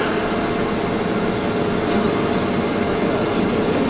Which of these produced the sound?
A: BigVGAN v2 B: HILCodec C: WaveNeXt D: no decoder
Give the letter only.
D